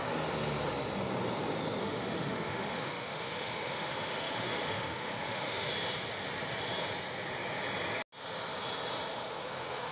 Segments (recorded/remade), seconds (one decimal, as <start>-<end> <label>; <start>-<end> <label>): 0.0-1.8 recorded; 1.8-5.7 remade; 5.7-9.1 recorded; 9.1-9.9 remade